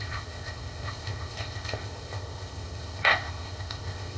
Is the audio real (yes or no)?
no